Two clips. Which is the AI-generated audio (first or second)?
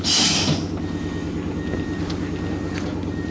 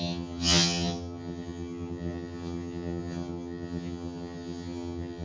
second